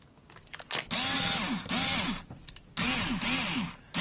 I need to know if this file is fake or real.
real